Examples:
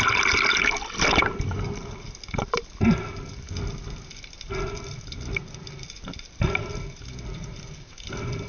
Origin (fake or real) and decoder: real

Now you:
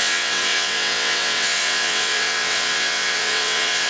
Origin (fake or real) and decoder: fake, vocoder, WaveNeXt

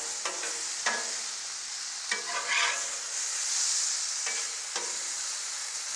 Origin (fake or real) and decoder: real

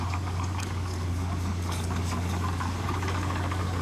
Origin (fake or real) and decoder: fake, codec, DAC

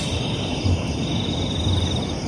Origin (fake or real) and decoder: real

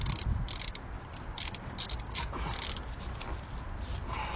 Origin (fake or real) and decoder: real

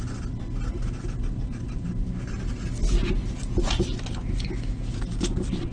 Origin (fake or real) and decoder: real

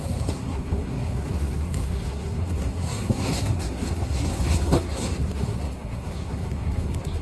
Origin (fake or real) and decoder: fake, codec, SNAC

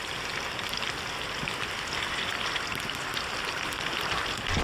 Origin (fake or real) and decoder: real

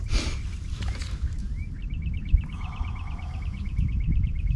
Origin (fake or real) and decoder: fake, vocoder, BigVGAN v2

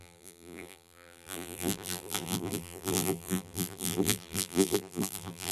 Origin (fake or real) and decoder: fake, vocoder, BigVGAN v2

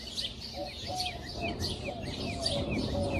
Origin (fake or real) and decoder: real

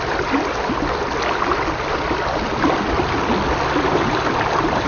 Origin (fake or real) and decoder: real